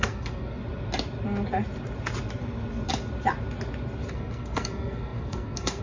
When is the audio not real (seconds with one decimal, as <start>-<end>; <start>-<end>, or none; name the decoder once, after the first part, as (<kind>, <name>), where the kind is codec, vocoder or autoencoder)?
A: 0.0-0.6 (codec, SNAC); 4.1-5.8